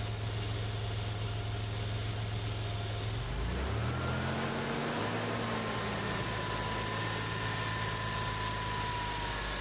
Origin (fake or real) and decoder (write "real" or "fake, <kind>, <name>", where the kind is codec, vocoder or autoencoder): real